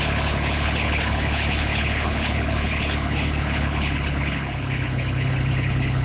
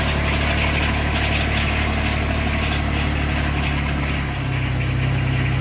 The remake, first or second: first